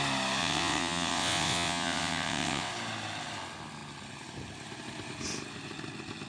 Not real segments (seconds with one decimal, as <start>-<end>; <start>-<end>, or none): 0.4-2.7